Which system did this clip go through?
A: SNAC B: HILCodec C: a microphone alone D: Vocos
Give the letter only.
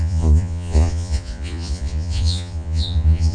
D